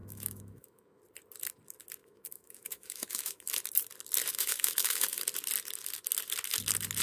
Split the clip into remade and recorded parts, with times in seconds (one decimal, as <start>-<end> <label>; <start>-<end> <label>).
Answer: 0.0-1.0 remade; 1.0-2.0 recorded; 2.0-3.5 remade; 3.5-4.3 recorded; 4.3-5.2 remade; 5.2-7.0 recorded